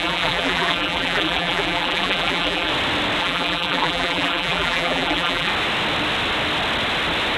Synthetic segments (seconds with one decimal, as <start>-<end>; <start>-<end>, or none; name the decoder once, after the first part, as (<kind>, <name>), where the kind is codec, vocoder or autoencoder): 0.0-2.7 (vocoder, BigVGAN v2); 3.2-5.5